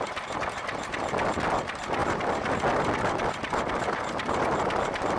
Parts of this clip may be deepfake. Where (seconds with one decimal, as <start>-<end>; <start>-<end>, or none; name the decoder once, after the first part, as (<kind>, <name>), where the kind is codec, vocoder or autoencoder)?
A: none